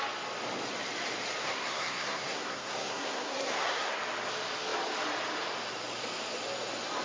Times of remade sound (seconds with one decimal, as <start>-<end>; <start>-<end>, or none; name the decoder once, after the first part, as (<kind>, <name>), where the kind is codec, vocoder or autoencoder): 1.4-4.0 (codec, SNAC)